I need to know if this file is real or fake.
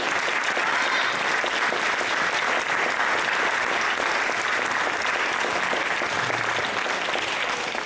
real